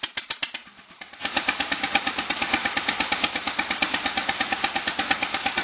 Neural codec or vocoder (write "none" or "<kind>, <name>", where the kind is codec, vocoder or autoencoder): none